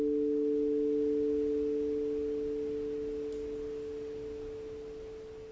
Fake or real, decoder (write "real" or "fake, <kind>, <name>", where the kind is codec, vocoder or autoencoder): real